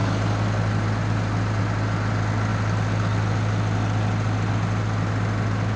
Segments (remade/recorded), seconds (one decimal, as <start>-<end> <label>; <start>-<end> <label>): 0.0-5.8 recorded